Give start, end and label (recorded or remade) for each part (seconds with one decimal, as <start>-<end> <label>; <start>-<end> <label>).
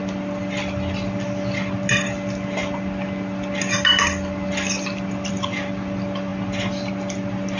0.0-7.6 recorded